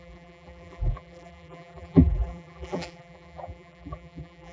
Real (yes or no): no